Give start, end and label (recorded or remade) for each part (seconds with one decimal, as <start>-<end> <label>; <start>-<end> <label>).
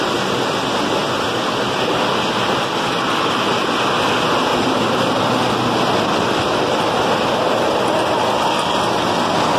0.0-4.5 recorded; 4.5-5.8 remade; 5.8-9.6 recorded